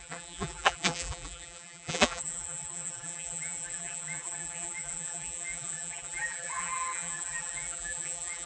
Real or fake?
fake